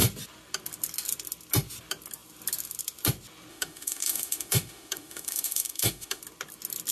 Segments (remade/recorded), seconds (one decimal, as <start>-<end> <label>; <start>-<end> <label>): 0.0-3.5 recorded; 3.5-6.2 remade; 6.2-6.9 recorded